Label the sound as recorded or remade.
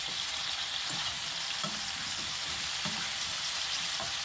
remade